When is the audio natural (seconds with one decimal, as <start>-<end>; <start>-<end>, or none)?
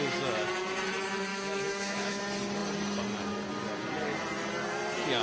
0.0-1.3; 2.2-5.2